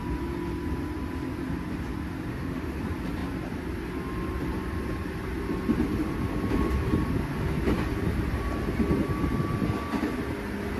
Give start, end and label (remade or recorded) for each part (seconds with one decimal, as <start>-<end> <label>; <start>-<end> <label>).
0.0-2.3 recorded; 2.3-2.8 remade; 2.8-10.8 recorded